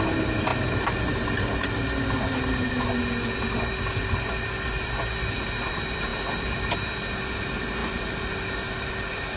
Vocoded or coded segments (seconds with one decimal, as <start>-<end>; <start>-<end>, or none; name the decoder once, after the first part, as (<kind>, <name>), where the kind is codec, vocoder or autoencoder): none